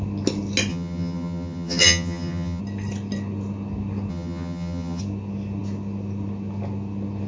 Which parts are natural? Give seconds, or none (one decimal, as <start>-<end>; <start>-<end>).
0.0-0.7; 2.6-4.1; 5.0-7.3